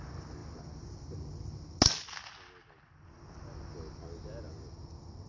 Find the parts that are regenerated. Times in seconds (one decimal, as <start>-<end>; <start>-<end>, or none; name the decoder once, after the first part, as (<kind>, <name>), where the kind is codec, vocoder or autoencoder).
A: none